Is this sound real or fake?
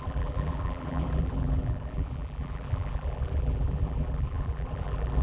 fake